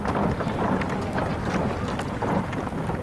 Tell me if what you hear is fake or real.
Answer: real